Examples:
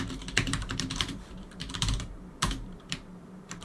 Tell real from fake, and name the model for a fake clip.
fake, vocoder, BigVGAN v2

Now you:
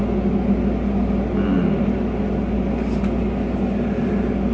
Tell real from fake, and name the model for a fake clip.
real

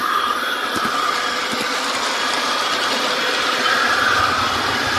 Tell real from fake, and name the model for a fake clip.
fake, vocoder, BigVGAN v2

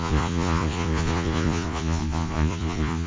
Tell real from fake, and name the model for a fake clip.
fake, vocoder, Vocos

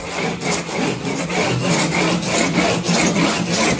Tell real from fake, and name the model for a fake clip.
real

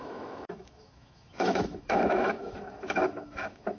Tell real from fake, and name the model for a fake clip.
fake, autoencoder, DAC-VAE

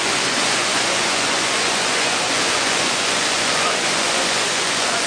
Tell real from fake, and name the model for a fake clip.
fake, vocoder, Vocos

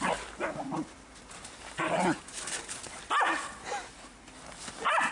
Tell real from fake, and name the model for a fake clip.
real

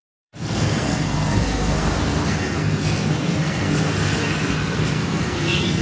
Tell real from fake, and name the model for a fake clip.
fake, codec, SNAC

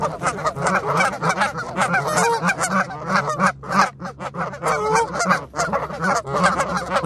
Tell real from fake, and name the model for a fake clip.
real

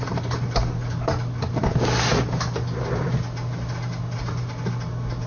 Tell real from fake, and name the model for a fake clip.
real